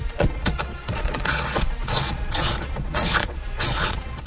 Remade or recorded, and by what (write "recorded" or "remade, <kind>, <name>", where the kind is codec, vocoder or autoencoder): remade, vocoder, Vocos